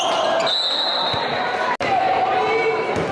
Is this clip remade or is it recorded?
recorded